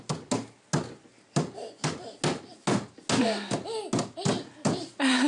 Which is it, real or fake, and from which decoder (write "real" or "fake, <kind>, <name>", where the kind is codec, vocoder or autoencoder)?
real